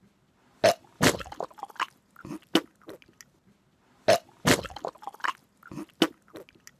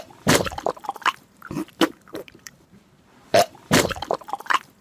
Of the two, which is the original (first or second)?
first